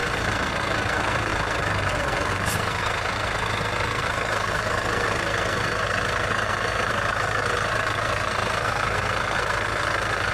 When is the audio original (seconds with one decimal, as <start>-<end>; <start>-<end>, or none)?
none